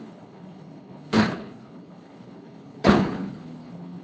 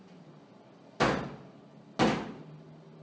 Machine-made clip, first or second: first